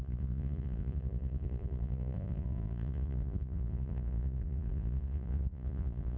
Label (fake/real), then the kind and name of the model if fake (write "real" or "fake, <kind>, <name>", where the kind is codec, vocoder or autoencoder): fake, vocoder, Vocos